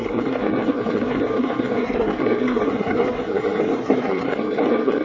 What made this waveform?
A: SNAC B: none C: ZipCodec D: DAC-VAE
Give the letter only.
A